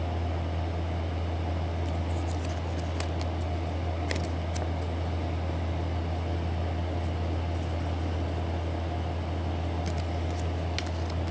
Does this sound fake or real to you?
real